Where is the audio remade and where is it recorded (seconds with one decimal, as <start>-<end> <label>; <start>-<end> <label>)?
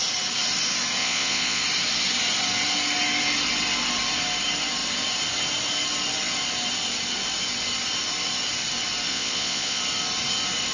0.0-1.0 recorded; 1.0-1.6 remade; 1.6-9.1 recorded; 9.1-9.8 remade; 9.8-10.7 recorded